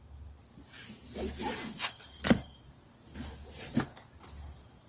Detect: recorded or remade recorded